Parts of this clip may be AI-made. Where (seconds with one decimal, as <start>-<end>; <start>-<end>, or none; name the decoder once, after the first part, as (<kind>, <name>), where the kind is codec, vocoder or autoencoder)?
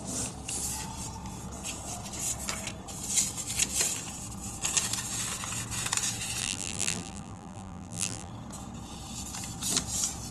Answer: 6.4-8.3 (vocoder, BigVGAN v2)